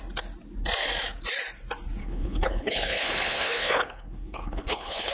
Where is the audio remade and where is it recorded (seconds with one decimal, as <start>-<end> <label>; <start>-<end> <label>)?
0.0-2.0 recorded; 2.0-5.1 remade